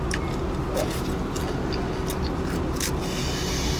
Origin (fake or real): real